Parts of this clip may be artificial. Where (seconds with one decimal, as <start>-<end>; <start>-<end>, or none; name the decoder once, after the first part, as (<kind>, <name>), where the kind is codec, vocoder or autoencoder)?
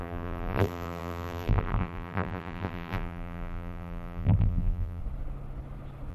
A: 0.0-5.0 (vocoder, BigVGAN v2)